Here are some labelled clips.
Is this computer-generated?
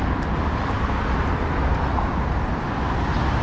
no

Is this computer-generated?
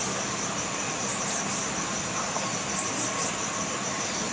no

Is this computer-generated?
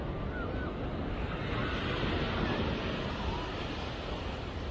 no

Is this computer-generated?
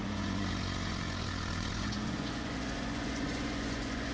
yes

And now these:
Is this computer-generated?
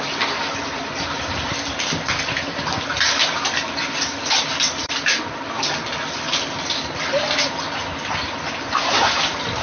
no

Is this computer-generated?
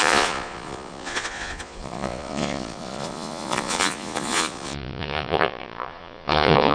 yes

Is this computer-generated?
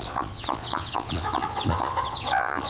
yes